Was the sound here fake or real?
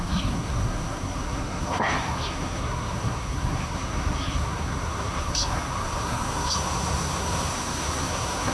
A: fake